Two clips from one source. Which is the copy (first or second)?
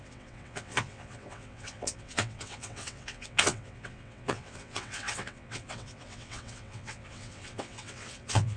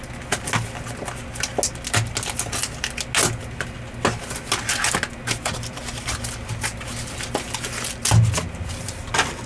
first